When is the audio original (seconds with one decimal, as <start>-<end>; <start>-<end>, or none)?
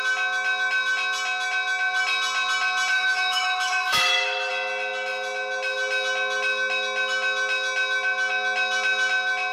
0.0-2.9; 4.5-9.5